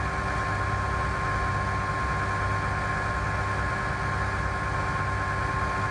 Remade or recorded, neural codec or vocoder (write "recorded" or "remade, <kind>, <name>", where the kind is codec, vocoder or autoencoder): recorded